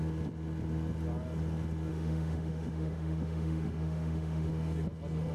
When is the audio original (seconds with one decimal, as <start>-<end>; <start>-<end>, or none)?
0.0-1.9; 4.5-5.3